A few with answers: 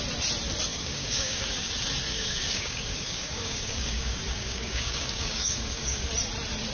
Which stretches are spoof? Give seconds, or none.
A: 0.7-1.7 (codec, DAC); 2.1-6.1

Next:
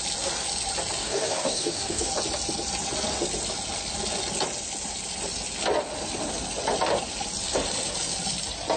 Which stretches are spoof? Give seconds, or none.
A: 1.0-2.1 (codec, DAC)

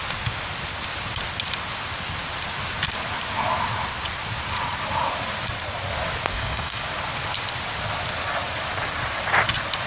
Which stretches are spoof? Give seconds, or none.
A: 6.3-6.8 (codec, DAC)

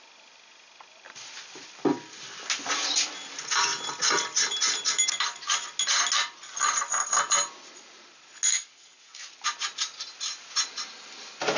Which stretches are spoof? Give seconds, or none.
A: 8.5-9.3 (codec, DAC)

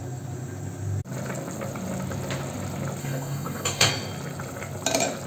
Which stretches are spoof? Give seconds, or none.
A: 3.0-3.9 (codec, DAC)

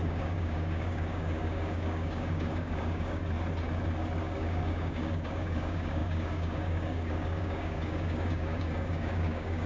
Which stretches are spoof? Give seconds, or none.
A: 0.0-3.2 (codec, DAC); 4.2-9.7